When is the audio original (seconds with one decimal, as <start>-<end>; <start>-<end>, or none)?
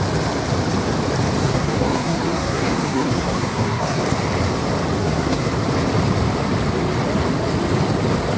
0.0-1.4; 4.0-5.0; 5.5-8.4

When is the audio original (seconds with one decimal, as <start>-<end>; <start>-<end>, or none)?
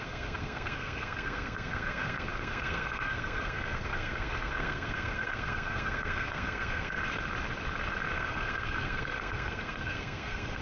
7.0-8.1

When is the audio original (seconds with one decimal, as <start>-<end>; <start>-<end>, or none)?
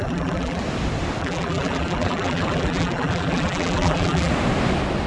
0.6-1.2; 4.3-5.1